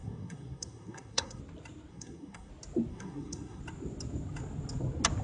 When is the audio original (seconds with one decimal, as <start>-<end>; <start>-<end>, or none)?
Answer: 1.4-1.9; 2.5-2.9; 3.6-5.2